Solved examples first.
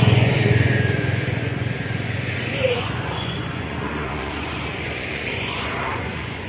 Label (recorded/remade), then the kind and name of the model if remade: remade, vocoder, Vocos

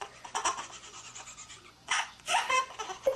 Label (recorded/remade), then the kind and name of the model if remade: remade, vocoder, Vocos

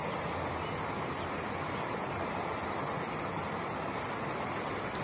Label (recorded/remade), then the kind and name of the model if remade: recorded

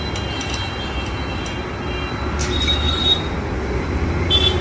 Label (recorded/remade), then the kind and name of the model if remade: recorded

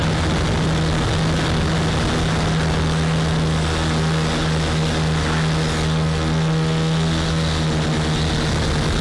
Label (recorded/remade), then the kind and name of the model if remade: recorded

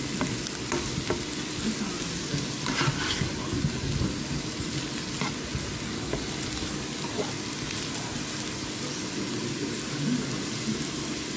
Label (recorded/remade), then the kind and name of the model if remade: recorded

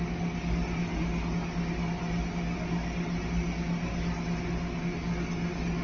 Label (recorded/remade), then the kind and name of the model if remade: recorded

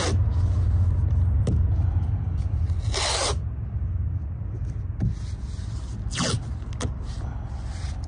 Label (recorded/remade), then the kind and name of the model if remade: recorded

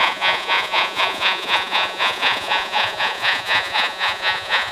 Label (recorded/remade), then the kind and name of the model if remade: remade, vocoder, Vocos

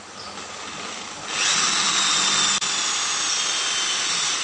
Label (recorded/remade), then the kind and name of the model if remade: recorded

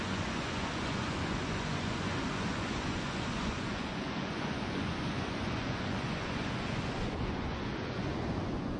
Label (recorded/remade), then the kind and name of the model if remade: remade, vocoder, Vocos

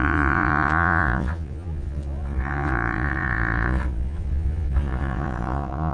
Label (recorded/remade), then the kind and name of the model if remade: remade, vocoder, Vocos